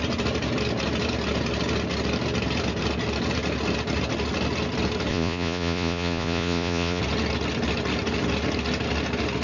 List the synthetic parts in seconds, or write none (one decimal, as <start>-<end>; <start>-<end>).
5.1-7.0